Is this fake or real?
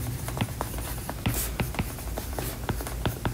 fake